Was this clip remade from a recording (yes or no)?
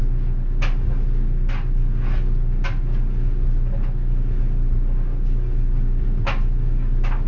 no